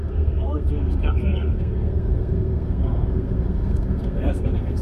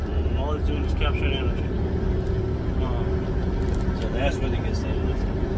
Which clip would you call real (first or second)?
second